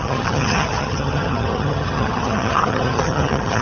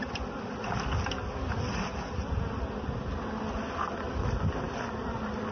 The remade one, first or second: first